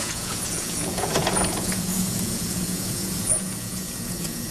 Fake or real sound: fake